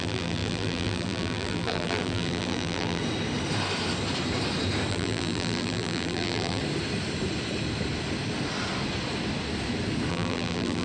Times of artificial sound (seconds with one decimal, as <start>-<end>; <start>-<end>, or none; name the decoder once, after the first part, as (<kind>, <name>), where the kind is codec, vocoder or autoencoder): 0.0-3.0 (vocoder, BigVGAN v2); 4.9-6.6; 10.1-10.8